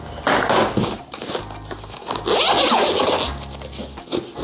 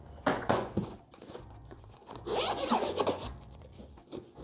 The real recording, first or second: first